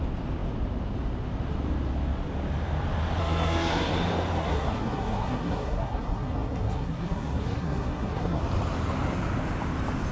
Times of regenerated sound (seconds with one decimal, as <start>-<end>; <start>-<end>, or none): 3.2-3.9; 4.4-8.4